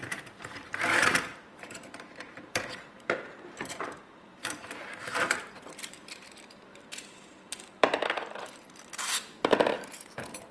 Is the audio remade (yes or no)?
yes